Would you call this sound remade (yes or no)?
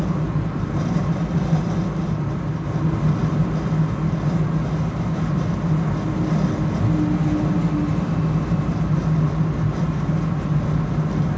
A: no